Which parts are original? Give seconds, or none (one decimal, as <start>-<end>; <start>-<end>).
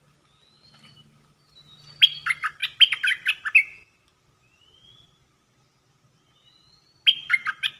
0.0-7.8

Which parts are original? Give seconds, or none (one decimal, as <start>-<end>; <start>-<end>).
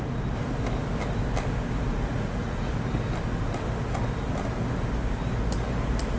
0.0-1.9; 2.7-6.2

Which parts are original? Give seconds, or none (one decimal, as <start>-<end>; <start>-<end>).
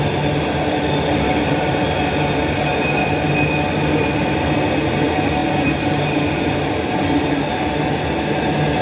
0.0-8.8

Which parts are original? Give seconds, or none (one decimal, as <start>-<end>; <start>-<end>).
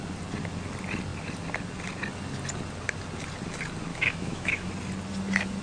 0.0-3.9; 4.7-5.6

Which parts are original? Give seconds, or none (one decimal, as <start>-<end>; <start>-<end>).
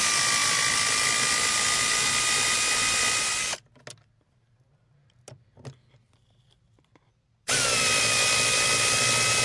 0.0-5.8; 7.9-9.4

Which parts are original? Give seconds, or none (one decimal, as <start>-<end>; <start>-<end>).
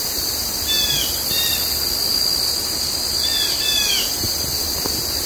0.0-5.3